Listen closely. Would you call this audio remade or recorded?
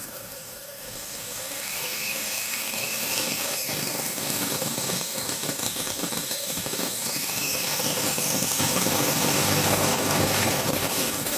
remade